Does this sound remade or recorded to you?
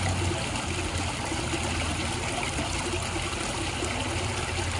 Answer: recorded